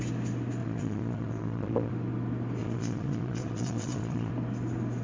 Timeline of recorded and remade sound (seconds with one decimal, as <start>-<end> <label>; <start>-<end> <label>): 0.0-0.6 recorded; 0.6-1.9 remade; 1.9-2.6 recorded; 2.6-4.3 remade; 4.3-5.0 recorded